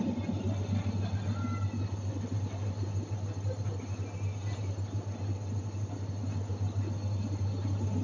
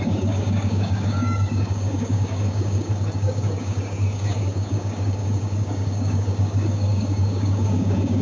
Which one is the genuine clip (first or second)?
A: first